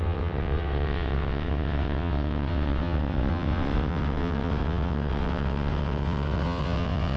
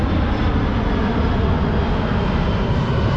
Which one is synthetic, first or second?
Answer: first